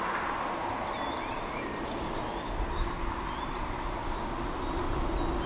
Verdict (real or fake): real